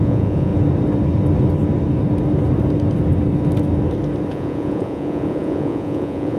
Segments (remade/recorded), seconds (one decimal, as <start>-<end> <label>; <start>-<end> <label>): 0.0-0.5 remade; 0.5-4.3 recorded; 4.3-6.4 remade